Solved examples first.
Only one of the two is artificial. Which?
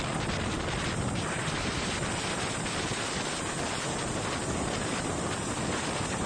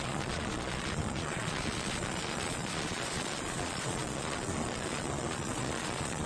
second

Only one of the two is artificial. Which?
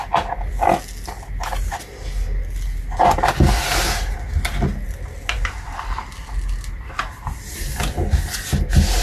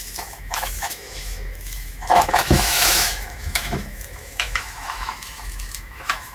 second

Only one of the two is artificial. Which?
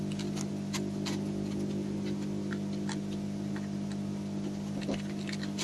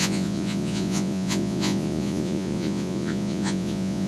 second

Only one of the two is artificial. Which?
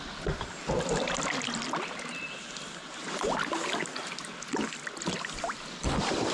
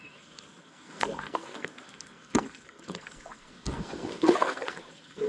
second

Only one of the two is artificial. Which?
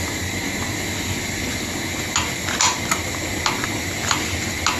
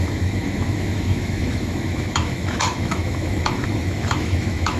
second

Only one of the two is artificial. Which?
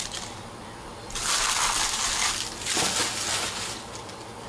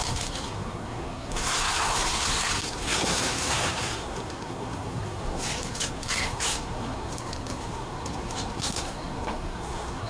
second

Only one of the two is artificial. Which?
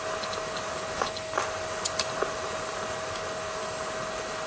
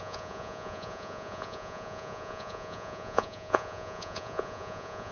second